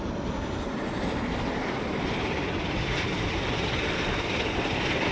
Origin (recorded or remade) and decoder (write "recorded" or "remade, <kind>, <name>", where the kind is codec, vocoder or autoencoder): recorded